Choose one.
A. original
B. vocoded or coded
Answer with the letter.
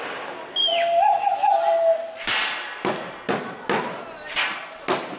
A